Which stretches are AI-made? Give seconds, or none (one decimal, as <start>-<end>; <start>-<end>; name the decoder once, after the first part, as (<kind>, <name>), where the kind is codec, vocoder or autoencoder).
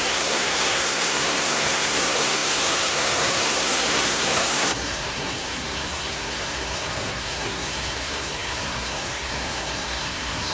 0.0-10.5 (codec, SNAC)